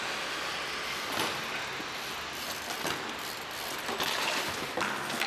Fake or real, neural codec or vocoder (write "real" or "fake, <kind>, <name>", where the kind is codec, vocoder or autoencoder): real